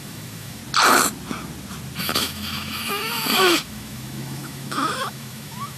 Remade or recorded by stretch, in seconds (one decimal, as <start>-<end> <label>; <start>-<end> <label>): 0.0-0.6 remade; 0.6-2.0 recorded; 2.0-5.8 remade